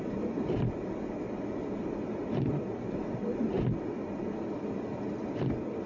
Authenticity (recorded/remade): recorded